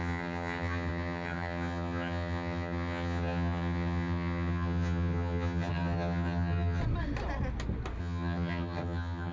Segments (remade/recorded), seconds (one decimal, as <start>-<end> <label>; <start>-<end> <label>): 0.0-6.8 remade; 6.8-8.0 recorded; 8.0-9.3 remade